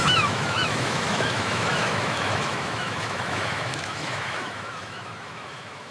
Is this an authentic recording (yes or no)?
no